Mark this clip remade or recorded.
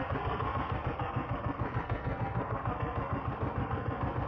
remade